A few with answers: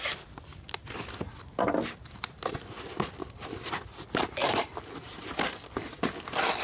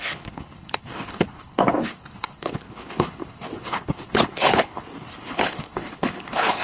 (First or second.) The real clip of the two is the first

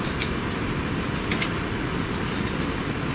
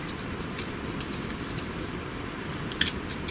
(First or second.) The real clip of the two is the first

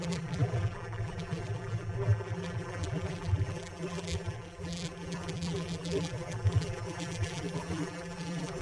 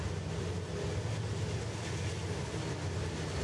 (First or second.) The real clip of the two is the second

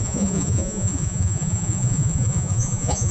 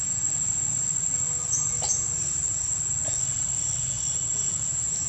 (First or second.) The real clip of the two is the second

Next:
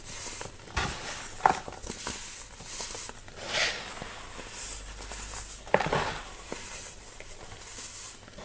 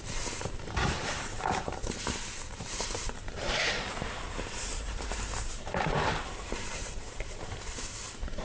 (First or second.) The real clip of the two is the first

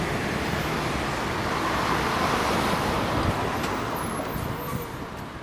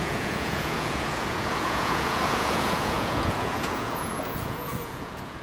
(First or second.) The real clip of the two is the first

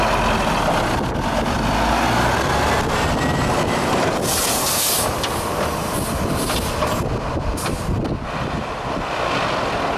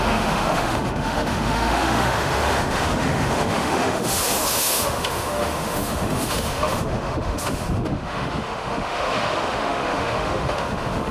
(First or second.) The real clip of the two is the first